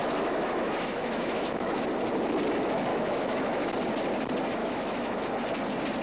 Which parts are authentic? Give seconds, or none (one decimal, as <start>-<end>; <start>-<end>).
1.8-2.9; 3.7-4.6; 5.2-6.0